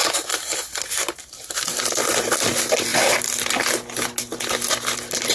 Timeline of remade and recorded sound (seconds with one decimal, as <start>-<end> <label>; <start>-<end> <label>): 0.0-5.3 recorded